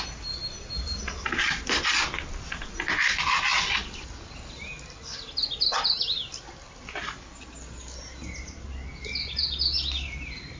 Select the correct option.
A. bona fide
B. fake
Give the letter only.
A